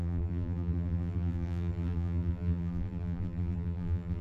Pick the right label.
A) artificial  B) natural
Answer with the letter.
A